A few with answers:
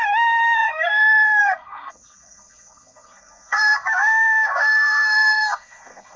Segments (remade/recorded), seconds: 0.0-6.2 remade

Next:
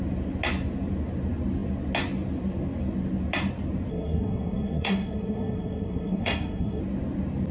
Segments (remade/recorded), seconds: 0.0-3.9 recorded; 3.9-6.8 remade; 6.8-7.5 recorded

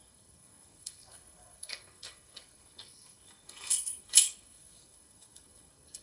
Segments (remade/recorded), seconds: 0.0-6.0 remade